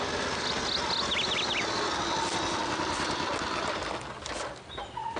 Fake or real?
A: real